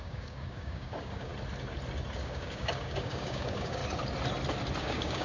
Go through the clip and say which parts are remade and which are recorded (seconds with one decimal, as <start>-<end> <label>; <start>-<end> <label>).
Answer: 0.0-1.3 remade; 1.3-2.2 recorded; 2.2-3.8 remade; 3.8-4.8 recorded; 4.8-5.2 remade